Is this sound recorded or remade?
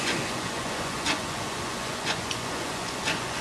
remade